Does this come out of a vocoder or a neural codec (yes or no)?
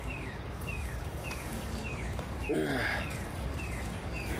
yes